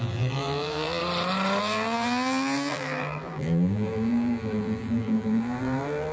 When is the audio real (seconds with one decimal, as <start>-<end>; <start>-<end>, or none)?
1.0-1.6